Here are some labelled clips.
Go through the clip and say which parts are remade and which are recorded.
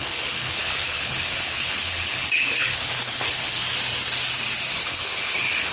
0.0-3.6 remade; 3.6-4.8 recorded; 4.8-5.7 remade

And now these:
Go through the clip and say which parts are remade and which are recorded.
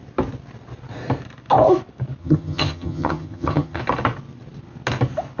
0.0-2.2 recorded; 2.2-3.8 remade; 3.8-5.4 recorded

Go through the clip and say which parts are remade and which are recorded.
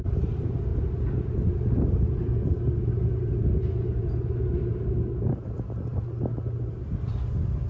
0.0-7.7 recorded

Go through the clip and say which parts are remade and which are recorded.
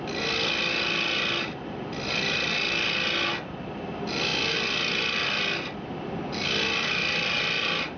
0.0-8.0 recorded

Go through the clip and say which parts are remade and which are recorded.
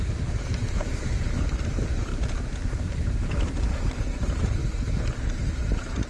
0.0-4.6 remade; 4.6-5.3 recorded; 5.3-6.1 remade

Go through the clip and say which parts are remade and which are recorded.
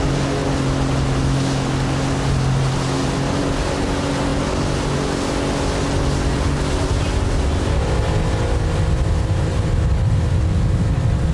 0.0-11.3 recorded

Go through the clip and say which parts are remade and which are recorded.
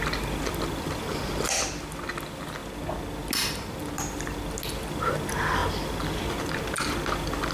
0.0-7.5 recorded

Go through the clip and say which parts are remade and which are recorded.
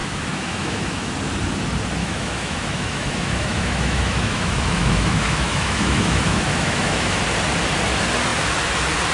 0.0-1.1 remade; 1.1-2.0 recorded; 2.0-7.2 remade; 7.2-9.1 recorded